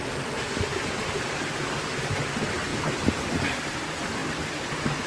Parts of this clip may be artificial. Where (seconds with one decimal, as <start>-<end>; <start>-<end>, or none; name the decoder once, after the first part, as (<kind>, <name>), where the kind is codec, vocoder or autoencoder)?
0.7-2.0 (vocoder, BigVGAN v2); 2.7-3.7; 4.2-5.1